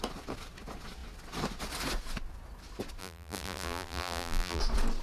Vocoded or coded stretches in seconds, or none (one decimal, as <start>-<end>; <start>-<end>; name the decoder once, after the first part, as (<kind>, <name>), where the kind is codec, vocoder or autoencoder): 3.0-4.6 (vocoder, BigVGAN v2)